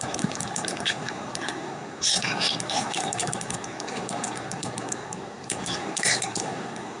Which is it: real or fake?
fake